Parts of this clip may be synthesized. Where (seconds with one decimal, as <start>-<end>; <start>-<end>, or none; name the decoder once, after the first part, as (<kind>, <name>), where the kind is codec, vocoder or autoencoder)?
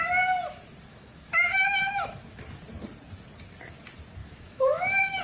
0.9-2.1 (autoencoder, DAC-VAE); 4.2-5.2